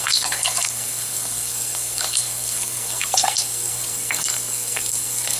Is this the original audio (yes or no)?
no